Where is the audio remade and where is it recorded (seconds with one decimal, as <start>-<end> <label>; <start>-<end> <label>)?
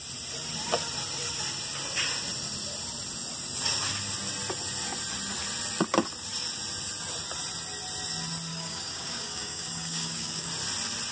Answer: 0.0-8.5 recorded; 8.5-10.5 remade; 10.5-11.1 recorded